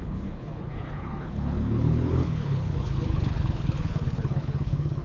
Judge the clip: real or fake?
fake